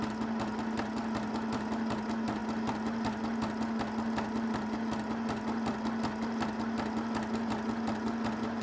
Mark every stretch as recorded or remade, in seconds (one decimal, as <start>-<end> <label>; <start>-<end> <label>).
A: 0.0-8.6 recorded